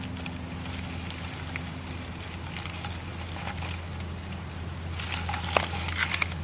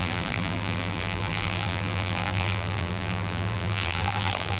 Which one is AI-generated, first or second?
second